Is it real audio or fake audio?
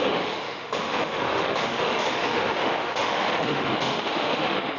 fake